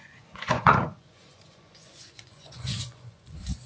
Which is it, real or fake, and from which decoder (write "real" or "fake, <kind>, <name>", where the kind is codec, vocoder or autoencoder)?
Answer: fake, vocoder, Vocos